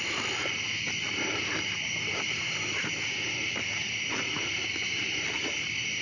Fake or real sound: real